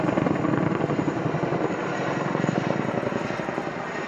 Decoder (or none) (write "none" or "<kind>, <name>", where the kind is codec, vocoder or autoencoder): none